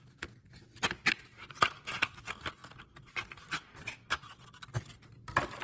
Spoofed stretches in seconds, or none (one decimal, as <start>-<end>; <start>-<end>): none